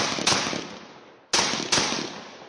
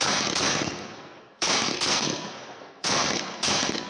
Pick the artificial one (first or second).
second